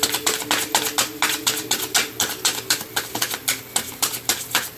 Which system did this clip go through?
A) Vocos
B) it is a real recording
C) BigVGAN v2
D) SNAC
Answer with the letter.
B